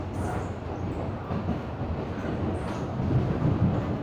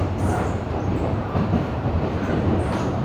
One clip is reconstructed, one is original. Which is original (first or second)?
first